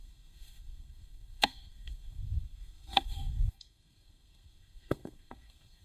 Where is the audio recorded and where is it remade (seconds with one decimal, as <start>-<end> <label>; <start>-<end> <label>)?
0.0-5.8 remade